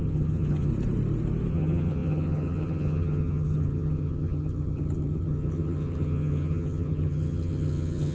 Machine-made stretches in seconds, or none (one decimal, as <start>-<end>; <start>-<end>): 0.0-0.7; 1.5-8.1